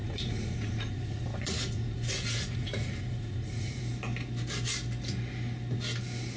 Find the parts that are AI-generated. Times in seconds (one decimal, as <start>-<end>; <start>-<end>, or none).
0.0-3.8